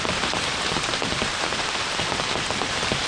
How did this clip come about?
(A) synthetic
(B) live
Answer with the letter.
A